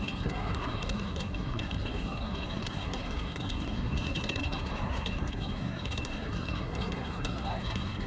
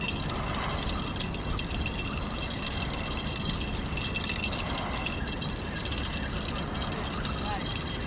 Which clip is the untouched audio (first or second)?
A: second